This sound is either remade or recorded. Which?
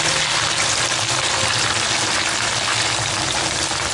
recorded